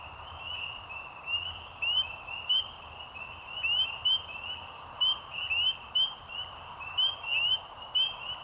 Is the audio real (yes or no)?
yes